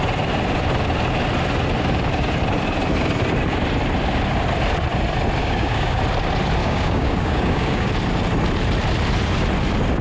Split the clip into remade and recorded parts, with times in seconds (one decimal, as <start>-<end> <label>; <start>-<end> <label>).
0.0-5.4 recorded; 5.4-6.0 remade; 6.0-6.6 recorded; 6.6-7.9 remade; 7.9-10.0 recorded